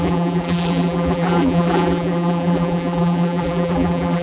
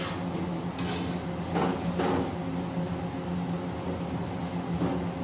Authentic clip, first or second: second